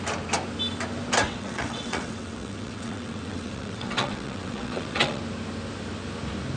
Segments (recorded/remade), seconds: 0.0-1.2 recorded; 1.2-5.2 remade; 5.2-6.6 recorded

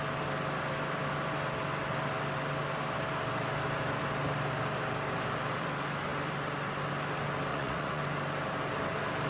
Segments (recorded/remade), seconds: 0.0-7.5 recorded; 7.5-8.0 remade; 8.0-9.3 recorded

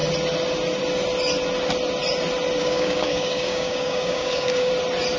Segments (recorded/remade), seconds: 0.0-2.6 recorded; 2.6-4.7 remade; 4.7-5.2 recorded